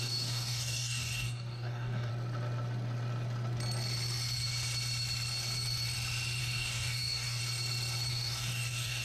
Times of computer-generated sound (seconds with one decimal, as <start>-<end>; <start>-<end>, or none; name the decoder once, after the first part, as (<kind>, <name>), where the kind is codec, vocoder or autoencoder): 0.0-2.1 (codec, DAC); 6.4-7.4; 8.1-9.0